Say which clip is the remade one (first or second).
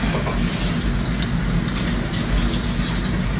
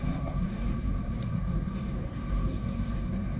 second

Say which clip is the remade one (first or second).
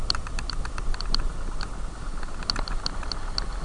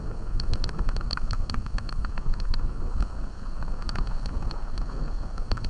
second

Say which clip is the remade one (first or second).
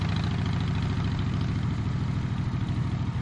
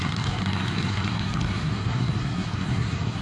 second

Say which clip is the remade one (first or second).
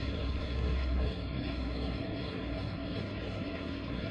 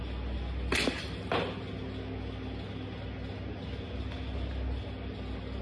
first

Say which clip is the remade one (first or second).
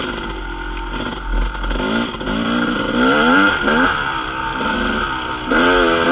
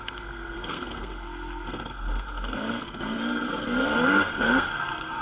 second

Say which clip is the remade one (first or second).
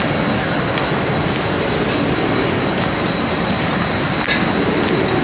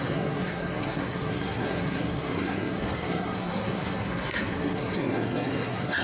second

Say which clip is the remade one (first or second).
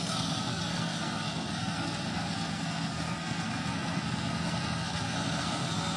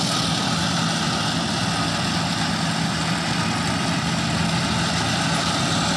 first